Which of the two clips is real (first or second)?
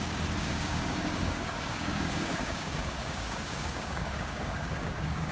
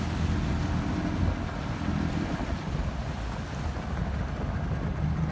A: second